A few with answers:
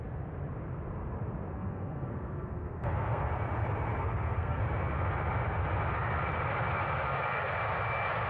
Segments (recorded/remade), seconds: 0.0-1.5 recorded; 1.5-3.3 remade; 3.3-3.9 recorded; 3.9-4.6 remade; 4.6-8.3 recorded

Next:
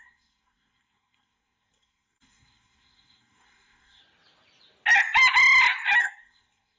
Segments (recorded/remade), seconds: 0.0-4.0 remade; 4.0-6.0 recorded; 6.0-6.8 remade

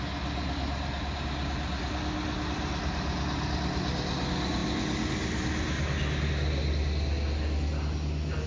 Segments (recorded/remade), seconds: 0.0-8.5 recorded

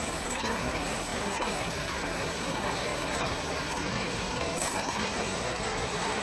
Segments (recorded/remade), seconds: 0.0-6.2 remade